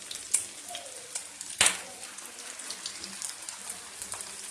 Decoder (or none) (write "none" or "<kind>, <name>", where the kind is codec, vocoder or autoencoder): none